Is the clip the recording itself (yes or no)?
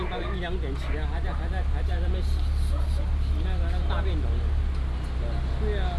yes